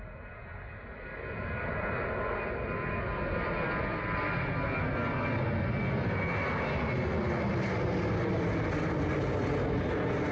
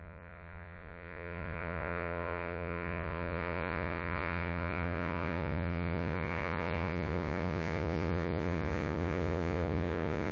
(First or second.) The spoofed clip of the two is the second